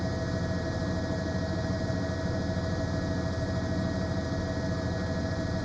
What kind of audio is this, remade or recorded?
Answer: recorded